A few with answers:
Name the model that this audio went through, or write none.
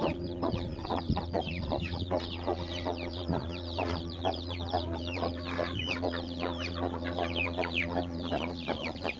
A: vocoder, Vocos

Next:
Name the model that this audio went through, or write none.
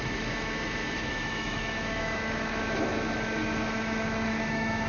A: autoencoder, DAC-VAE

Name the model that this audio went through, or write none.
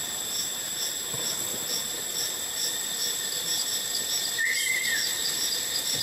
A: none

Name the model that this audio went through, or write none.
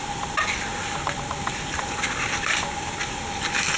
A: none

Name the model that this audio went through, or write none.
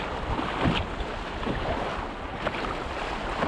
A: none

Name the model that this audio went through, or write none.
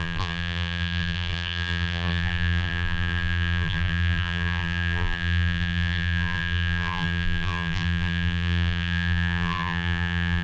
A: vocoder, BigVGAN v2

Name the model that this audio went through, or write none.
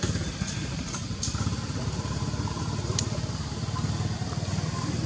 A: vocoder, BigVGAN v2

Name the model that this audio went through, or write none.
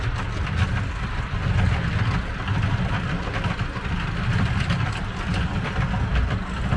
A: none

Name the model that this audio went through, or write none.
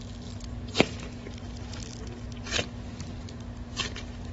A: none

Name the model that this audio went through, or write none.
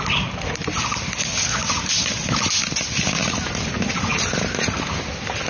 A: none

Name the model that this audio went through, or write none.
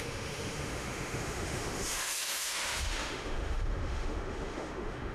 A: autoencoder, DAC-VAE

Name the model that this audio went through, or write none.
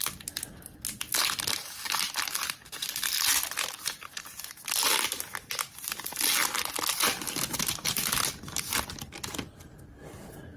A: none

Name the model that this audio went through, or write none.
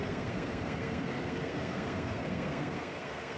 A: codec, SNAC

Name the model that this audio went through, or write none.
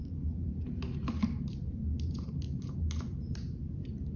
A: vocoder, BigVGAN v2